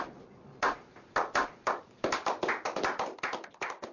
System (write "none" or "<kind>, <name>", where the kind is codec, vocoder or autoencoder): none